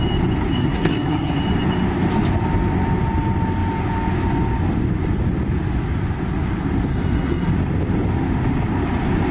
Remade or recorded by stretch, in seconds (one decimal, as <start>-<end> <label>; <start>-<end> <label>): 0.0-0.6 recorded; 0.6-1.4 remade; 1.4-6.9 recorded; 6.9-7.5 remade; 7.5-9.3 recorded